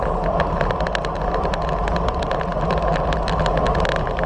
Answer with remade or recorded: recorded